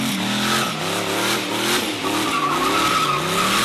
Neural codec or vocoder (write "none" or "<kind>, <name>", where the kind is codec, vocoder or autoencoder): none